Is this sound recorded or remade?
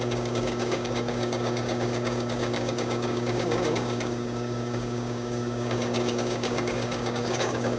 remade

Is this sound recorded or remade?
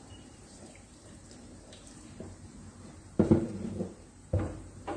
remade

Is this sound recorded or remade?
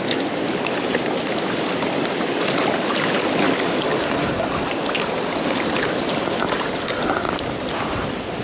recorded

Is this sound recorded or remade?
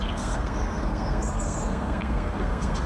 remade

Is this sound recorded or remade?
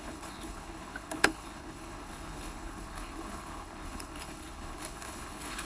remade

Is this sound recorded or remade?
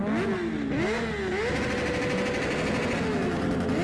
recorded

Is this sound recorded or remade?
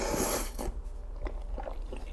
recorded